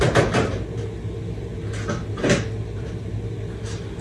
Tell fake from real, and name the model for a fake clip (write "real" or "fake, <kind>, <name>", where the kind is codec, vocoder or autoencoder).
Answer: real